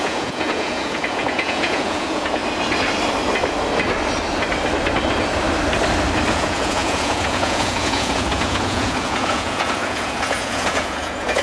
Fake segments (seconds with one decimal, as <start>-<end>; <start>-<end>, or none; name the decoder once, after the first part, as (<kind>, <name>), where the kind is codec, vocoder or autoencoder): 0.0-2.4 (vocoder, Vocos); 6.3-11.4